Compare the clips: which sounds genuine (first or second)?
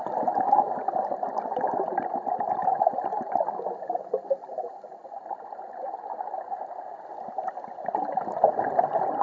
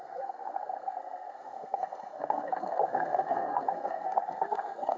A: first